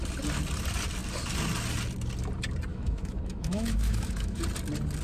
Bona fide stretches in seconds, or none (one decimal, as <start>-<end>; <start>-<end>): 0.0-2.7; 4.4-5.0